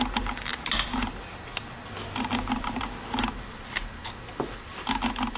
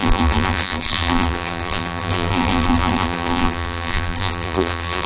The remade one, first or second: second